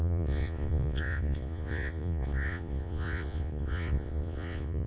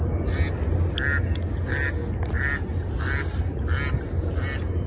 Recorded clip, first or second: second